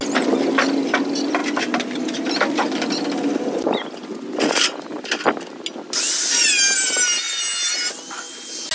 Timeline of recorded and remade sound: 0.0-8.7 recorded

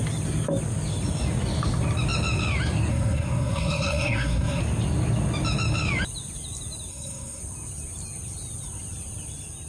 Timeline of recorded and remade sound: 0.0-2.9 recorded; 2.9-4.6 remade; 4.6-6.9 recorded; 6.9-7.4 remade; 7.4-9.7 recorded